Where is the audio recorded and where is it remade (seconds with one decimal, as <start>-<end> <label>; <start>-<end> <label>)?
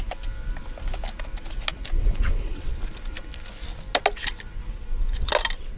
0.0-2.0 recorded; 2.0-2.7 remade; 2.7-5.8 recorded